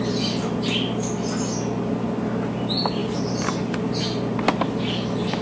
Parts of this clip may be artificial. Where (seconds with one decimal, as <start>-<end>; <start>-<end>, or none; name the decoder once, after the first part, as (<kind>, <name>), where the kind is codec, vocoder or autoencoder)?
none